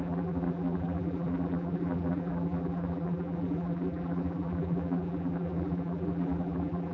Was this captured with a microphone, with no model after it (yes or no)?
no